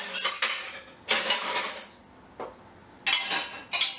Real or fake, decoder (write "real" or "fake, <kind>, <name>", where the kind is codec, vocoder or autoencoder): real